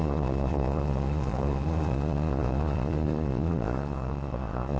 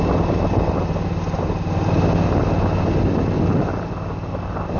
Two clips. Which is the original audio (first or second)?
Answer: second